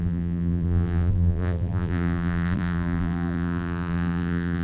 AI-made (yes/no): yes